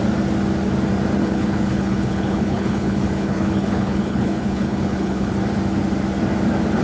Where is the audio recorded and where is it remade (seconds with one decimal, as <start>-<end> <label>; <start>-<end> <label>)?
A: 0.0-1.2 recorded; 1.2-5.3 remade; 5.3-6.8 recorded